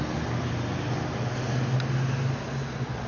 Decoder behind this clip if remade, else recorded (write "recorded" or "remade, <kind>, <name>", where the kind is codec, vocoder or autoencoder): recorded